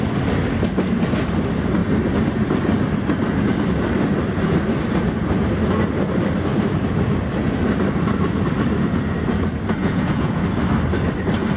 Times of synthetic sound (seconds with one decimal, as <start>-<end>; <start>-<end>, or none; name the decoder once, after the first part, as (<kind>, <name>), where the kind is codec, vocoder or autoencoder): 9.8-10.4 (vocoder, Vocos)

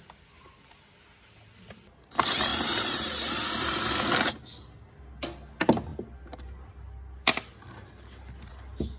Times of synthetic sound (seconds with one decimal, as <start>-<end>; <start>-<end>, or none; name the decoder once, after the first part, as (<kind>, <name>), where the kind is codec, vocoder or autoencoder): none

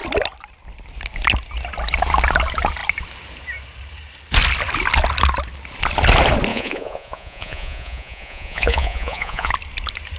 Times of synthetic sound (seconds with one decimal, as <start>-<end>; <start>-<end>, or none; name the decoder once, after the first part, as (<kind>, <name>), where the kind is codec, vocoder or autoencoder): 6.5-9.5 (vocoder, Vocos)

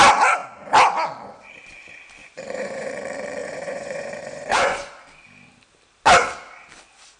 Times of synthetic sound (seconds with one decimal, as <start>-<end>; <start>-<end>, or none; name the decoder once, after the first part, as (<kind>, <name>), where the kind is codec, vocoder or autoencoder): 2.2-2.9 (vocoder, Vocos); 3.4-4.9